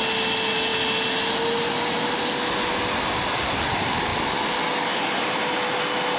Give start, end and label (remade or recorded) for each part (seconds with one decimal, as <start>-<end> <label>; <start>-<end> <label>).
0.0-6.2 recorded